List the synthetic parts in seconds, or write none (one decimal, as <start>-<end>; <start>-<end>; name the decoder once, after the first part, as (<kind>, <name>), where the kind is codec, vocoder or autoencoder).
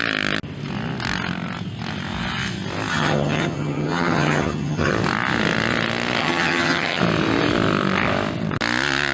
2.9-4.9 (vocoder, HiFi-GAN); 6.2-7.0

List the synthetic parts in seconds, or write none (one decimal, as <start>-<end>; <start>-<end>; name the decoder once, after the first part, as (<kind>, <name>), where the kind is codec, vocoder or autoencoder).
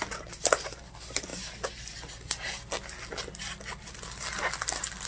none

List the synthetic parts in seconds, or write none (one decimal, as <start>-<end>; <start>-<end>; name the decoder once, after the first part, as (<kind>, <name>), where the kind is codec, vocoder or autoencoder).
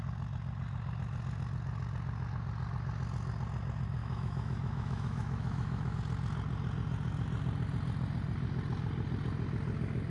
4.0-6.0 (autoencoder, DAC-VAE)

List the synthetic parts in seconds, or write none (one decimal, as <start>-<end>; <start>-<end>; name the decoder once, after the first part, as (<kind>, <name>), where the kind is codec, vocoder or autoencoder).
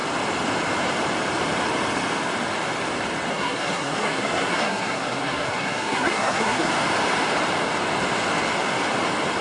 3.3-6.7 (codec, SNAC)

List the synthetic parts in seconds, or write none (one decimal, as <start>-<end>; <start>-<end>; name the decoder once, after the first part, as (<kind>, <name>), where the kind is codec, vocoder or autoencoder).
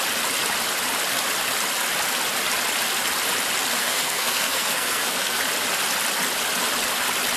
3.8-5.4 (codec, SNAC)